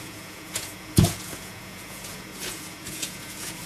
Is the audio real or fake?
fake